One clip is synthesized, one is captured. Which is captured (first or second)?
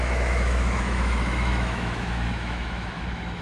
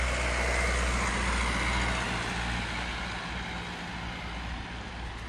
second